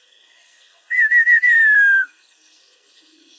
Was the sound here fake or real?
fake